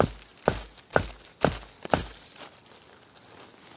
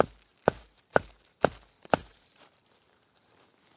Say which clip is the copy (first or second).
second